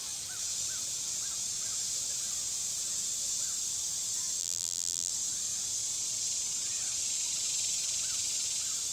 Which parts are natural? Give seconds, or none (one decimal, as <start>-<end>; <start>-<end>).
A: 0.0-4.4; 5.1-8.9